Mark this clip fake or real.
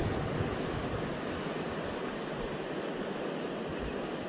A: real